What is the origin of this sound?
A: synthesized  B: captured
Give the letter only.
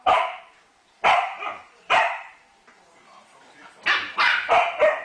A